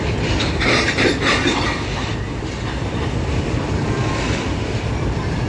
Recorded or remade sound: remade